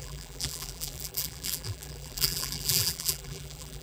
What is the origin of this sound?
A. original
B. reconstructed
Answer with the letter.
B